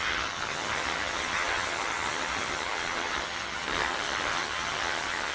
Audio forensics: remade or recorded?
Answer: remade